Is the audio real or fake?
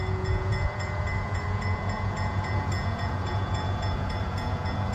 fake